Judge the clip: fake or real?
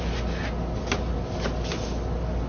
real